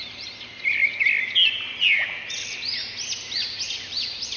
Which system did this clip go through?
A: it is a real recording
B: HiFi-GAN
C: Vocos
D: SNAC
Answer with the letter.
A